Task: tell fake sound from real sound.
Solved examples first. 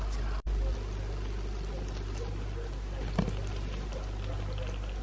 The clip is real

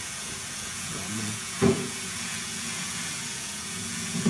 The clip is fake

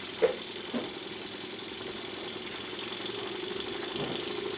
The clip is real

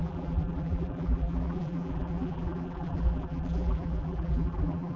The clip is fake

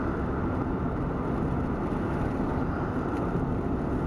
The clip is real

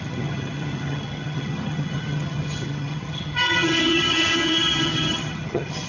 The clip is fake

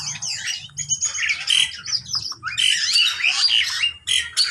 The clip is real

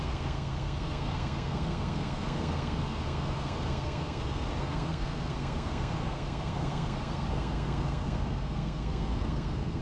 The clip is fake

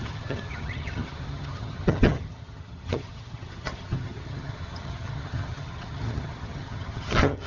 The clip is fake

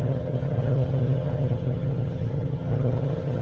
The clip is fake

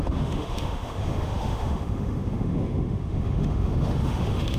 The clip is fake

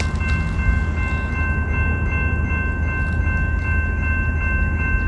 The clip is real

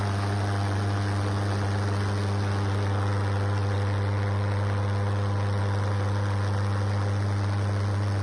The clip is real